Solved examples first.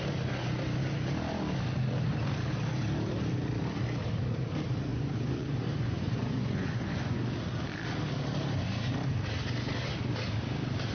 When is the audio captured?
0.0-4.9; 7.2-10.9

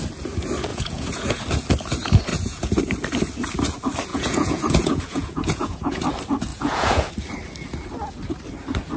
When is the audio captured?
0.0-0.7; 1.3-2.3; 2.8-4.1; 6.0-6.5; 7.1-9.0

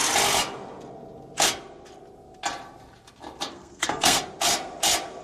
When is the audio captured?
0.0-3.5; 4.2-5.2